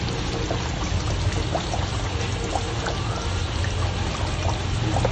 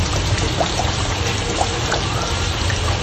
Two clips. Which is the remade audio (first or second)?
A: second